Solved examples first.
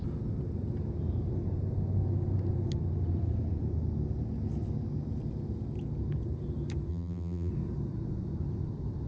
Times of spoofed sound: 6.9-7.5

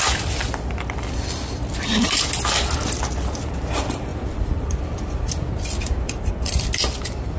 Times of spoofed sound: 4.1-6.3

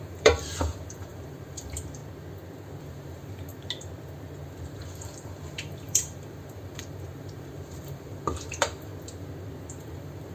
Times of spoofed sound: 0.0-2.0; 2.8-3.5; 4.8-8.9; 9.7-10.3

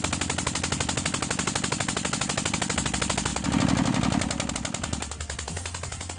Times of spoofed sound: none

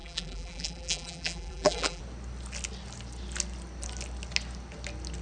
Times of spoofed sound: 0.0-2.0